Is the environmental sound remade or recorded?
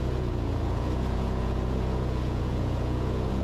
remade